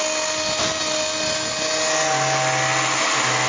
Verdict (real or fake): real